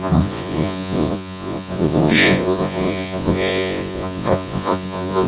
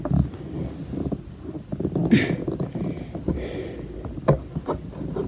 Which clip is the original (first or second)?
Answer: second